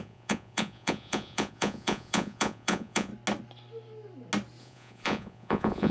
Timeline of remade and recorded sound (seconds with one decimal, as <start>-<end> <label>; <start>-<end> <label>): 0.0-3.1 remade; 3.1-4.6 recorded; 4.6-5.9 remade